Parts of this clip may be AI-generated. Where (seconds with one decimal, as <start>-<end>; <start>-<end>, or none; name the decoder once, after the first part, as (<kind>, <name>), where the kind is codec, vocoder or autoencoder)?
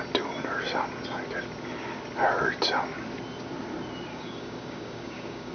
4.1-5.5 (codec, DAC)